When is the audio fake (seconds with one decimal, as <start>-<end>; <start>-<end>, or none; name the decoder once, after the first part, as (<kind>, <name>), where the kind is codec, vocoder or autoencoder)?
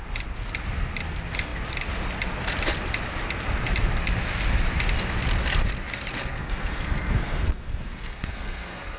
6.2-9.0 (codec, SNAC)